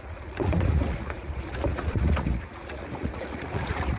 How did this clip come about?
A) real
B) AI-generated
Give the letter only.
B